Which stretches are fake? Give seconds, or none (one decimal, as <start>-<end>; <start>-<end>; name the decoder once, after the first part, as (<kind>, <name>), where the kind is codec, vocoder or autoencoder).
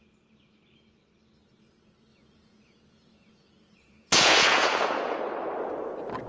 2.1-5.2 (vocoder, Vocos)